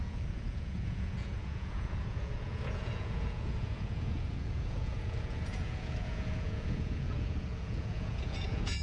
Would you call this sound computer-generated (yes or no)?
yes